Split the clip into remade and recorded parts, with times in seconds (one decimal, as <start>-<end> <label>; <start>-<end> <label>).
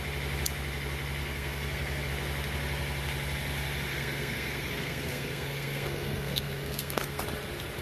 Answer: 0.0-1.2 recorded; 1.2-2.1 remade; 2.1-3.9 recorded; 3.9-7.2 remade; 7.2-7.8 recorded